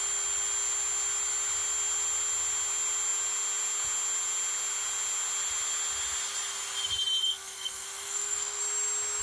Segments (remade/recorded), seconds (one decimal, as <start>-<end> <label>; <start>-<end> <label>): 0.0-7.2 recorded; 7.2-8.6 remade; 8.6-9.2 recorded